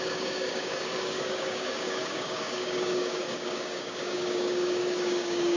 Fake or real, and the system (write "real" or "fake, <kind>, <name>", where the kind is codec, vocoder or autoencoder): fake, codec, DAC